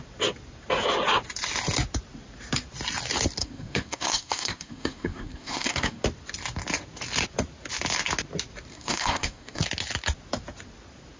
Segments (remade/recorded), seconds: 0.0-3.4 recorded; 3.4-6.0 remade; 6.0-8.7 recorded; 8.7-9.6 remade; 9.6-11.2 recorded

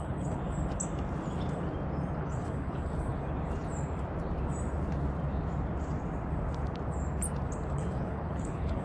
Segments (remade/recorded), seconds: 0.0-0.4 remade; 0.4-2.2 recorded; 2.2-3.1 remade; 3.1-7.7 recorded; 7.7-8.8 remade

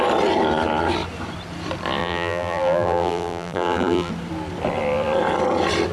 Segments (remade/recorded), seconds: 0.0-2.0 recorded; 2.0-4.1 remade; 4.1-5.9 recorded

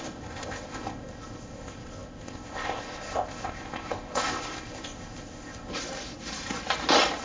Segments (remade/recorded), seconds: 0.0-5.7 remade; 5.7-7.2 recorded

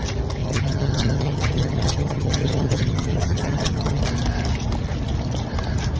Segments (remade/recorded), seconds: 0.0-0.4 recorded; 0.4-4.0 remade; 4.0-6.0 recorded

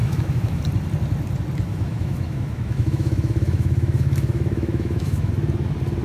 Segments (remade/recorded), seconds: 0.0-0.6 remade; 0.6-1.7 recorded; 1.7-5.3 remade; 5.3-6.0 recorded